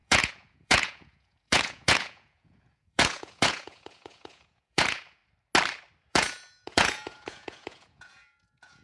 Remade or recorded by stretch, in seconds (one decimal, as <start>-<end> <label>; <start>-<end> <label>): 0.0-5.2 remade; 5.2-6.1 recorded; 6.1-8.8 remade